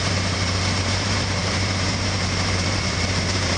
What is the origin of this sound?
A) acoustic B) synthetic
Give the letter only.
B